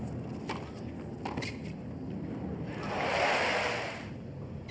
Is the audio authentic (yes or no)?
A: yes